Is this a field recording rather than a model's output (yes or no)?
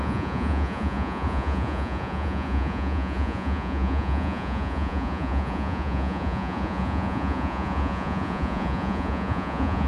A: no